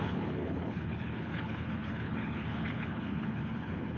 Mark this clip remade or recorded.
remade